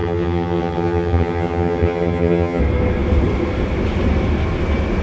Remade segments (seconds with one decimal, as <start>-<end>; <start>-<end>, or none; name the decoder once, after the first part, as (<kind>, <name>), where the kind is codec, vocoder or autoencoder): 0.0-2.6 (vocoder, HiFi-GAN)